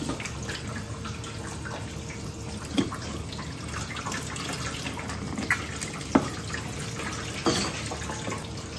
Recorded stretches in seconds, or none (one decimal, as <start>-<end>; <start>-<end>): 0.0-8.8